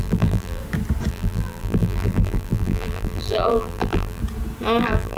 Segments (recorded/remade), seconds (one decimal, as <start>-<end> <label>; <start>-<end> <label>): 0.0-0.6 remade; 0.6-1.1 recorded; 1.1-4.2 remade; 4.2-4.8 recorded; 4.8-5.2 remade